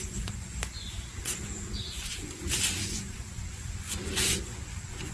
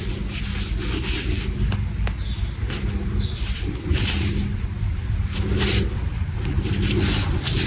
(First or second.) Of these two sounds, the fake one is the first